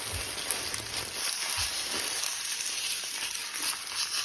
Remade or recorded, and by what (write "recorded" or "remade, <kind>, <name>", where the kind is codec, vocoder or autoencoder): recorded